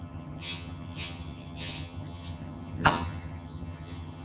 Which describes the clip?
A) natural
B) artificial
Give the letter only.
B